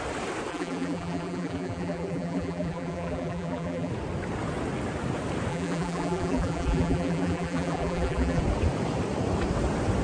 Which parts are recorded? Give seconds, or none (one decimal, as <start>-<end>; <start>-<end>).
0.0-0.5; 3.9-5.5; 8.4-10.0